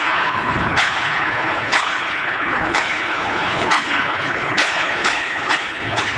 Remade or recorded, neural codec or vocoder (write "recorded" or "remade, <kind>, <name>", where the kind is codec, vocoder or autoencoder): remade, codec, HILCodec